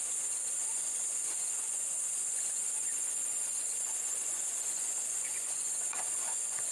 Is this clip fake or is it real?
fake